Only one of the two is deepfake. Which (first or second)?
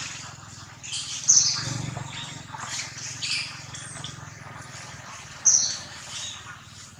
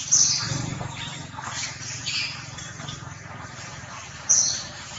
second